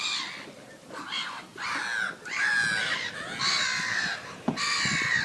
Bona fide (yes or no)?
yes